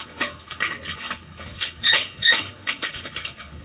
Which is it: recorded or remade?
remade